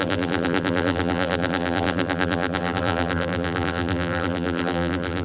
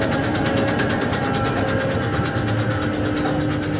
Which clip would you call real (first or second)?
second